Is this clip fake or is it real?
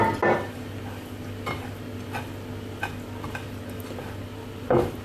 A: real